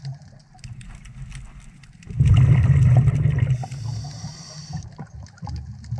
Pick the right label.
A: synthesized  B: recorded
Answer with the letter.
B